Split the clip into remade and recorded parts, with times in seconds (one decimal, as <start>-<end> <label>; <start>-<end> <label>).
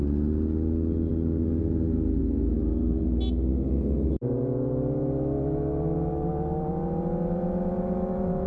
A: 0.0-8.5 recorded